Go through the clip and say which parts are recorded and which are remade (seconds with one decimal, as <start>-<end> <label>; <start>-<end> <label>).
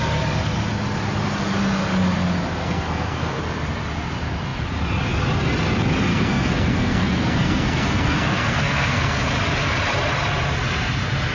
0.0-2.6 recorded; 2.6-3.4 remade; 3.4-6.1 recorded; 6.1-9.2 remade; 9.2-11.3 recorded